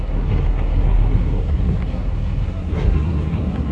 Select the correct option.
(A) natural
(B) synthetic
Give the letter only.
B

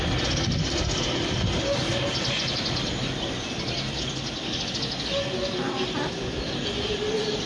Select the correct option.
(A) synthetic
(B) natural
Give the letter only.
B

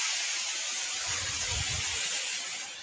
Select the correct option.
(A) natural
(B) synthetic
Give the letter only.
A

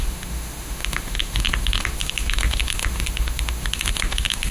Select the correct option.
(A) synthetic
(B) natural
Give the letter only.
A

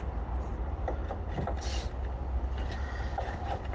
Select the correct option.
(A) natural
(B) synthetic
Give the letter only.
A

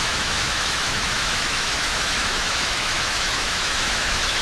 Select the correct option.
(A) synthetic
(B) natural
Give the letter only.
A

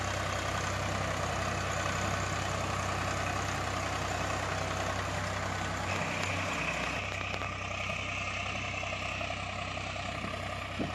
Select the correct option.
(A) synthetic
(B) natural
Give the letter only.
B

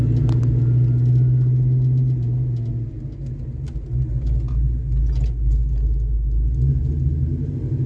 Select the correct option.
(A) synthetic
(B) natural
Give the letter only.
B